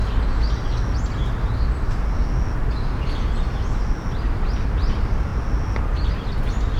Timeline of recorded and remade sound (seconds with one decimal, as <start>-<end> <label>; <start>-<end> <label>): 0.0-4.1 recorded; 4.1-5.3 remade; 5.3-6.8 recorded